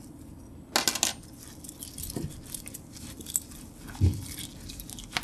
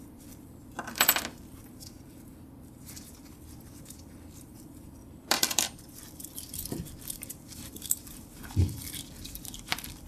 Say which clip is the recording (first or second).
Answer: first